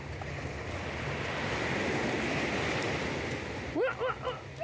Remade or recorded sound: recorded